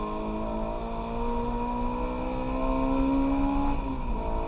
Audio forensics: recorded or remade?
recorded